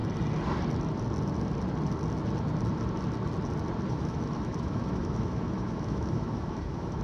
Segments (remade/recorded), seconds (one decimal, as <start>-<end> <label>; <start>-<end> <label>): 0.0-3.9 recorded; 3.9-7.0 remade